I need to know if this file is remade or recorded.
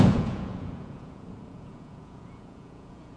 remade